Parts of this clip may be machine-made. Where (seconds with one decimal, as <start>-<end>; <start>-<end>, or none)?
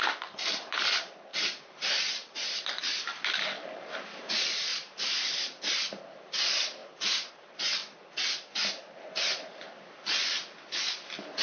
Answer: 1.3-4.3; 4.7-5.6